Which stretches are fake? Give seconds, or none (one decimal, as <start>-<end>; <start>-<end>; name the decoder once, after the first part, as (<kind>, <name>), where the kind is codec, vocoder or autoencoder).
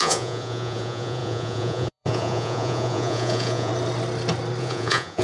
0.0-3.7 (vocoder, Vocos); 4.6-5.2